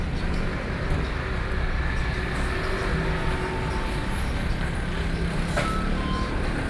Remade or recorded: recorded